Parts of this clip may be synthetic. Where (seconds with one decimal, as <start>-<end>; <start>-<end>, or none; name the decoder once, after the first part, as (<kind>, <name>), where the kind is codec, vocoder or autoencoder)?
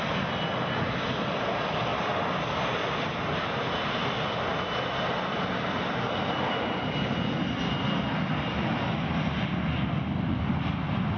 none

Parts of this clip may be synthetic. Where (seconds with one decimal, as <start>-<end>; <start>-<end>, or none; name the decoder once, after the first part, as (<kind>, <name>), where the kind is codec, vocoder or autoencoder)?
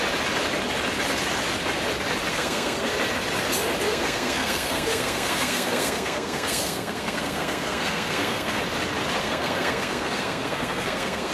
2.3-2.9 (codec, SNAC); 3.9-8.6; 9.2-11.3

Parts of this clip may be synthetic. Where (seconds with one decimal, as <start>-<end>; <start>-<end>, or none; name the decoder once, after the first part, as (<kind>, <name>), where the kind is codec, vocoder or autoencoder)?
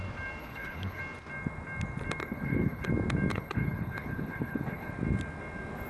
0.4-1.0 (codec, HILCodec); 2.2-2.9; 3.3-4.9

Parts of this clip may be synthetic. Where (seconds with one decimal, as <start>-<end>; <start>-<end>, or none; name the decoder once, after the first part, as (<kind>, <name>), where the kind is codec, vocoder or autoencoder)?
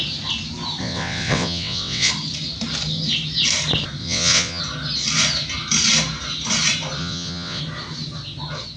0.8-2.1 (vocoder, WaveNeXt); 4.0-4.6; 7.0-7.6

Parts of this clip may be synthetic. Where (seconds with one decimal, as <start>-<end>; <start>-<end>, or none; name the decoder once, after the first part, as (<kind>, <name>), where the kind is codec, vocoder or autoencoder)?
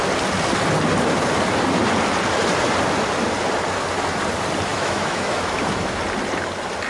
4.7-6.0 (autoencoder, DAC-VAE)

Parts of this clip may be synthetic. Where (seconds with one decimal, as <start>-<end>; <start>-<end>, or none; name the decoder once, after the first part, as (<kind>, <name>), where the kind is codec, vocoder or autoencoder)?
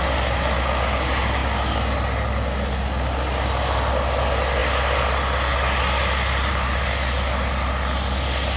none